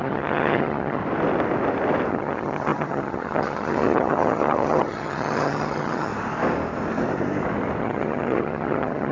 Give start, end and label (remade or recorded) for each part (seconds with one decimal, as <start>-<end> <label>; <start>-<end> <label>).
0.0-1.0 remade; 1.0-2.1 recorded; 2.1-6.1 remade; 6.1-7.8 recorded; 7.8-9.1 remade